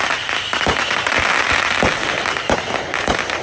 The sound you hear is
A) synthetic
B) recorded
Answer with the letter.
B